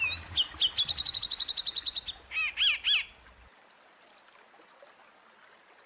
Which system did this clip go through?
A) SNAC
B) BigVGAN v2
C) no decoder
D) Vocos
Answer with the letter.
C